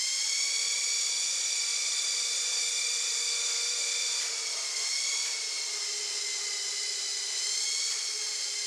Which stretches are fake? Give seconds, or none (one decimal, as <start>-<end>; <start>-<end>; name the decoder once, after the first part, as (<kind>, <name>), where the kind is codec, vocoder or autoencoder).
1.7-2.6 (vocoder, BigVGAN v2); 3.1-6.0